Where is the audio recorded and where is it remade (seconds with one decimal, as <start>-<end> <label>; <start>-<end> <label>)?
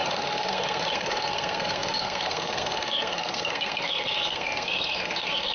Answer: 0.0-5.5 remade